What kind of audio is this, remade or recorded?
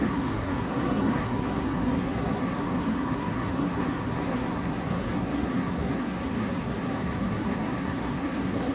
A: remade